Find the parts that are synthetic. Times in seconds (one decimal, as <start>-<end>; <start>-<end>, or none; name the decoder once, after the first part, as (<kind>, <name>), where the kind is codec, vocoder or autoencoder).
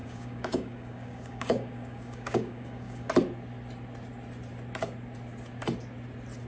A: 0.0-3.1 (codec, DAC)